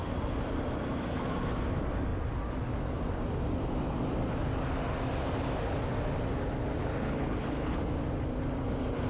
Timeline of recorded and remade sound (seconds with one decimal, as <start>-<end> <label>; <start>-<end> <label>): 0.0-6.8 recorded; 6.8-7.8 remade; 7.8-9.1 recorded